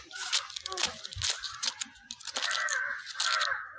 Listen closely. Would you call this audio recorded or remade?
recorded